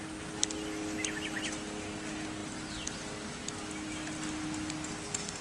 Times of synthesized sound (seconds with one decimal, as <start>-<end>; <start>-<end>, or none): none